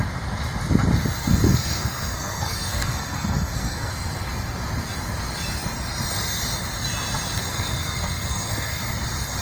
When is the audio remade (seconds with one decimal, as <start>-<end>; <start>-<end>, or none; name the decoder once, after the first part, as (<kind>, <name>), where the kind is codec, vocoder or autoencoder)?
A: 1.2-3.9 (codec, SNAC); 7.4-8.8